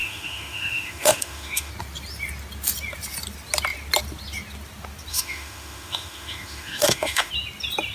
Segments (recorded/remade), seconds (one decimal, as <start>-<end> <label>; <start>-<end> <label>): 0.0-1.7 remade; 1.7-5.1 recorded; 5.1-7.3 remade; 7.3-7.9 recorded